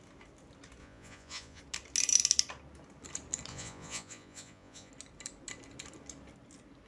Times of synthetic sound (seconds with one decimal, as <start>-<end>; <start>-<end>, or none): 0.8-1.6; 3.5-4.9